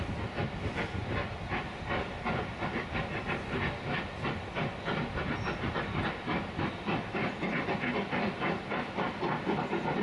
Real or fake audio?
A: real